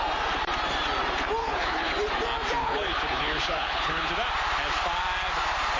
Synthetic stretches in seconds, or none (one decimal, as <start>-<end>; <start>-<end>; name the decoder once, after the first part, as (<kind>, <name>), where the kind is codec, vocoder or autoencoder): 1.4-1.9 (codec, HILCodec); 2.6-4.1